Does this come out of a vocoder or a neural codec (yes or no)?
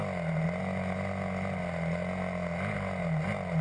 no